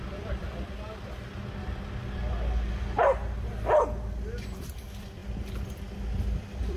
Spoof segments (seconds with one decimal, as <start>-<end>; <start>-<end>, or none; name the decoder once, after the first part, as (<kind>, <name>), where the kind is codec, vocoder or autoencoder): 0.0-0.5 (vocoder, BigVGAN v2); 4.6-6.8